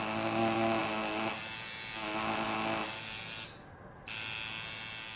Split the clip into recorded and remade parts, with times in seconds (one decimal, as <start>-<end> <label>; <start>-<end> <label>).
0.0-5.2 recorded